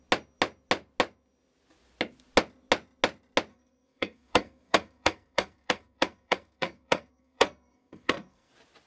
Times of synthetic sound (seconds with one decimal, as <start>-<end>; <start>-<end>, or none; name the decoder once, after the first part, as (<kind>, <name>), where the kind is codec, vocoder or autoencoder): 3.5-8.5 (codec, SNAC)